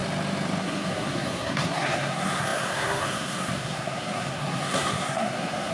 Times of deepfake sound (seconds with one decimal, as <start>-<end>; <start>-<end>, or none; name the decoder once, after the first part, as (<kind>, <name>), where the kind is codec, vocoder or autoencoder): 0.6-5.7 (codec, SNAC)